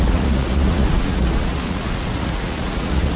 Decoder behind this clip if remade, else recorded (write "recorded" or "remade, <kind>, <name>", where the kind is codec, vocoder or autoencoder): remade, vocoder, Vocos